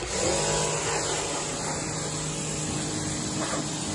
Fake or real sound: real